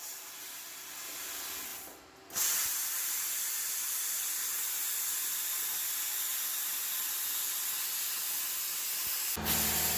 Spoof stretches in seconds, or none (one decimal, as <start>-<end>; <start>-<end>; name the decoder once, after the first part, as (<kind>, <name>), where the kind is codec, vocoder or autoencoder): 1.7-3.0 (vocoder, BigVGAN v2); 6.3-6.9